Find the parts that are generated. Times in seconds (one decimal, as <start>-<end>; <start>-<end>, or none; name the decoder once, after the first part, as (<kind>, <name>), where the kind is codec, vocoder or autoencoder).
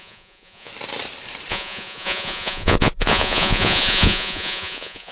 0.0-0.7 (vocoder, Vocos); 1.5-5.1